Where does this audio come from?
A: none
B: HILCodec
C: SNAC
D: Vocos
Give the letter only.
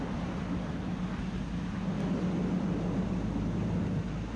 A